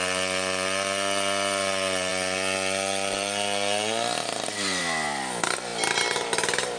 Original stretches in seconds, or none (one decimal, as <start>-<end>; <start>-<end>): 0.0-6.8